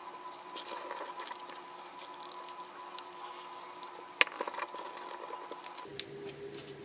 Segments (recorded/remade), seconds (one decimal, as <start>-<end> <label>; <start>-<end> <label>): 0.0-6.8 recorded